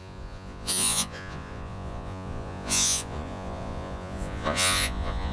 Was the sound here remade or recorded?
remade